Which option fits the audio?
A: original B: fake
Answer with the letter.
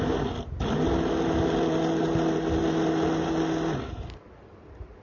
A